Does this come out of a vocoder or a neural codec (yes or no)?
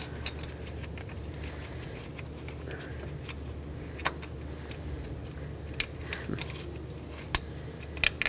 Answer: no